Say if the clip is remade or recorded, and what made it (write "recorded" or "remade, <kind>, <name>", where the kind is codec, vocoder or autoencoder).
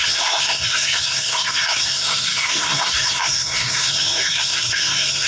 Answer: remade, codec, SNAC